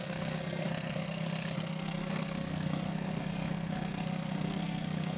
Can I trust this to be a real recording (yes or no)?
no